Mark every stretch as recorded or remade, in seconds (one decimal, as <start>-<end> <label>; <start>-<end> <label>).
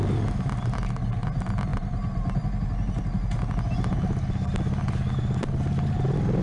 0.0-6.4 recorded